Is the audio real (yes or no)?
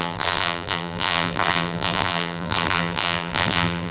no